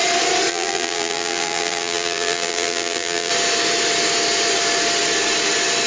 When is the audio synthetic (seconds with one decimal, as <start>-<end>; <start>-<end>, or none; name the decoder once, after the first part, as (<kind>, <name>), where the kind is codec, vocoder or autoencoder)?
0.5-3.3 (vocoder, BigVGAN v2)